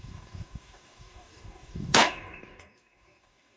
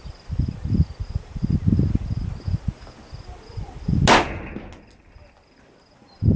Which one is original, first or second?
second